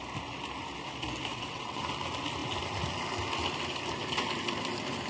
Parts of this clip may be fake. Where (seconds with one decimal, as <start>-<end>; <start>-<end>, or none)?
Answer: 1.3-1.8